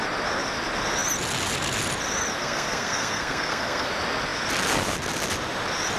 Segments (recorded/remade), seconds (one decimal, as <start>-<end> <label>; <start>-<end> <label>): 0.0-2.4 recorded; 2.4-3.9 remade; 3.9-6.0 recorded